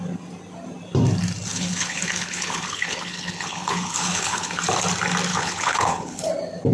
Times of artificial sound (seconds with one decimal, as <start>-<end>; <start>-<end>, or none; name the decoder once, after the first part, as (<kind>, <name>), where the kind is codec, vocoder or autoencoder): 1.5-4.6 (codec, HILCodec); 5.3-6.3